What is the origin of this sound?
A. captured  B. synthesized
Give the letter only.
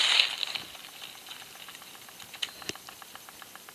A